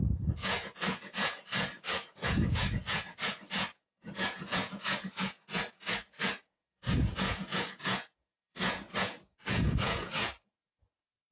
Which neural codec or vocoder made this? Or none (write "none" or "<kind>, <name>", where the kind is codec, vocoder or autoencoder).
vocoder, Vocos